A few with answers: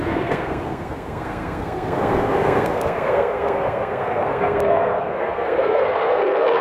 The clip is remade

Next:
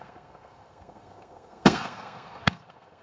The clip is remade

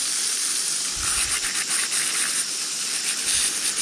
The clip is recorded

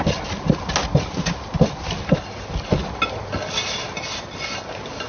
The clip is recorded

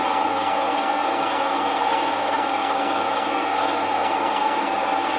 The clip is remade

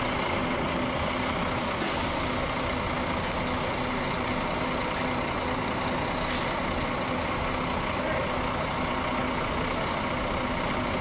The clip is recorded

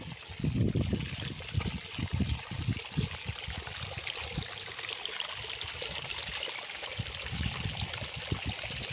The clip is recorded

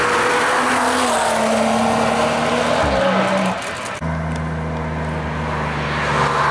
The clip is recorded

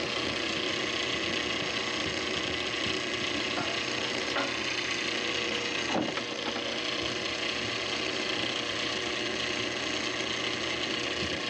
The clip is recorded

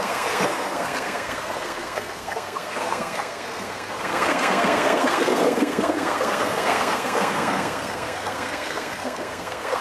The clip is remade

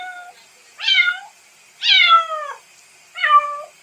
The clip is recorded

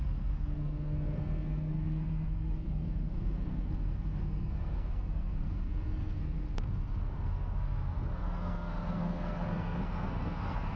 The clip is remade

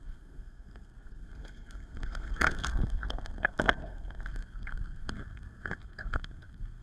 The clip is remade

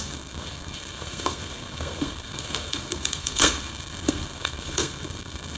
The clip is remade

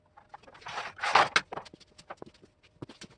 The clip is recorded